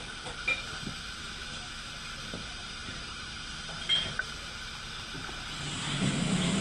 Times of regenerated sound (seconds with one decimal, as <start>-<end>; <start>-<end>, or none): 1.2-1.9